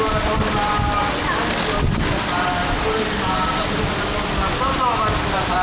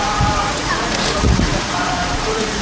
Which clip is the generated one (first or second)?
second